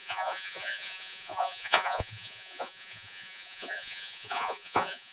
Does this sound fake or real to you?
fake